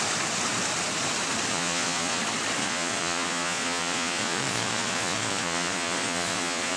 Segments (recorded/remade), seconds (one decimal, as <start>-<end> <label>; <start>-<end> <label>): 0.0-1.5 recorded; 1.5-2.2 remade; 2.2-2.6 recorded; 2.6-6.8 remade